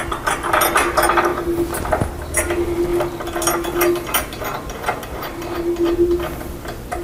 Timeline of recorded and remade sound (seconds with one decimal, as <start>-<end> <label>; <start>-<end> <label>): 0.0-7.0 recorded